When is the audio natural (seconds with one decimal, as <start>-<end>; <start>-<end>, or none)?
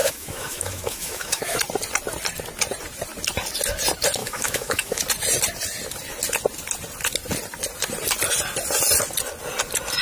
1.6-4.2; 5.0-10.0